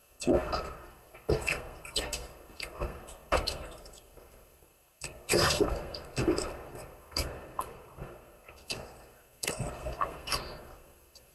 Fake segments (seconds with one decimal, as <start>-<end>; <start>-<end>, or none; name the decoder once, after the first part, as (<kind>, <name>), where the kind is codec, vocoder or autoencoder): 0.0-11.3 (codec, SNAC)